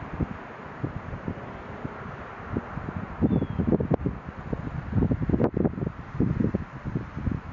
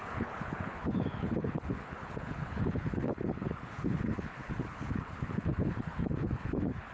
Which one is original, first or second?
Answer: first